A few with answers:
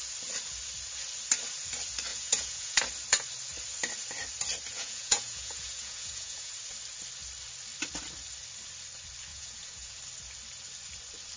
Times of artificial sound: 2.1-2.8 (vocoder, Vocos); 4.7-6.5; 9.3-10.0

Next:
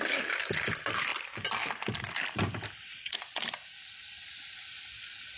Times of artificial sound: 2.9-3.4 (vocoder, Vocos)

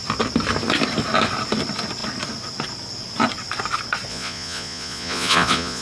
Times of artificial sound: 4.1-5.8 (vocoder, Vocos)

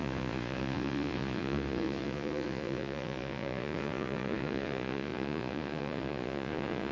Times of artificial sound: 0.0-6.9 (vocoder, Vocos)

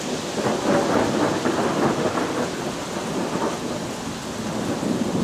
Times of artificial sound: none

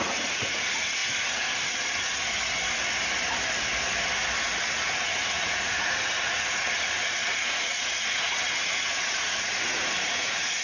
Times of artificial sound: 0.0-1.0 (vocoder, Vocos); 4.7-10.6